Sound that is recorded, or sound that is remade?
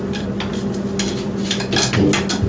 recorded